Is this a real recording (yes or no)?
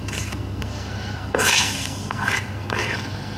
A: no